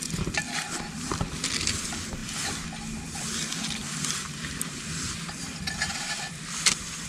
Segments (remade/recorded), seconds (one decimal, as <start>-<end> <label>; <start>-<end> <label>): 0.0-7.1 recorded